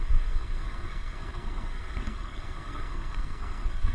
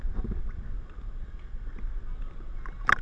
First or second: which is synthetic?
first